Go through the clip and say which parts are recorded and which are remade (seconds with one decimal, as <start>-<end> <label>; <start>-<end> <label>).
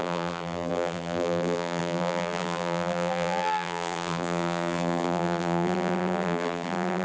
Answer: 0.0-7.0 remade